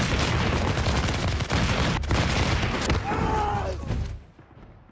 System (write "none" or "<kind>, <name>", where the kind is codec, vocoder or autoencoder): none